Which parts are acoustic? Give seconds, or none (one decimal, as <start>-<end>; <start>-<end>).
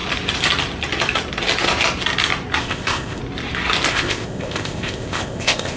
0.0-2.6; 3.2-3.9